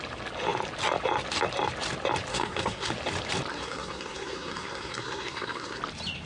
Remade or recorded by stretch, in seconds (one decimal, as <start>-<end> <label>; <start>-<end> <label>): 0.0-2.3 recorded; 2.3-2.9 remade; 2.9-3.5 recorded; 3.5-5.8 remade; 5.8-6.3 recorded